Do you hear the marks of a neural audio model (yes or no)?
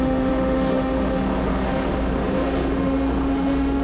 yes